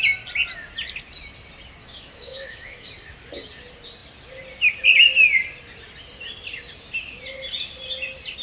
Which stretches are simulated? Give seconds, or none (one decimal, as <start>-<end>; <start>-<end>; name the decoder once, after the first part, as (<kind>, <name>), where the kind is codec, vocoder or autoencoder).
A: 1.8-2.9 (autoencoder, DAC-VAE)